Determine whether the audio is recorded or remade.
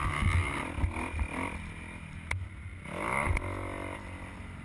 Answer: recorded